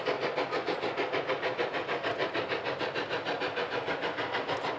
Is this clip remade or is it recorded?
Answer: recorded